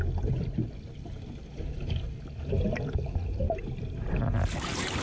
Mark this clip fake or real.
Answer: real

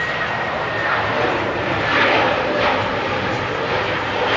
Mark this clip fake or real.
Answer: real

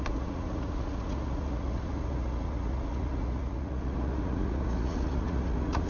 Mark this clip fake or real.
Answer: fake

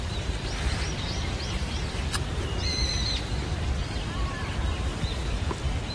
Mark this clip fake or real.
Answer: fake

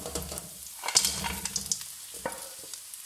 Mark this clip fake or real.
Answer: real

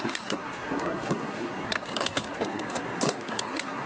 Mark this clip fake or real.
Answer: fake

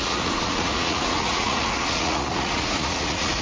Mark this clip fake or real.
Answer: fake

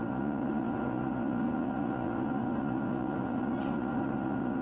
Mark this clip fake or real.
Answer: fake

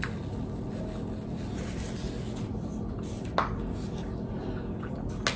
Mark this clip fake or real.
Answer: real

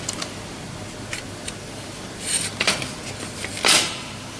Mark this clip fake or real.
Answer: real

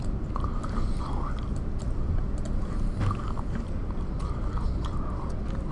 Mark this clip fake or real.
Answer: real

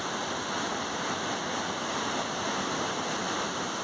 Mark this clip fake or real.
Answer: real